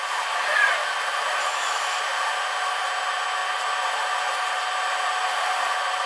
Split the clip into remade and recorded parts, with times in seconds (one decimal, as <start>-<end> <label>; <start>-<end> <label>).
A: 0.0-1.4 recorded; 1.4-2.0 remade; 2.0-6.1 recorded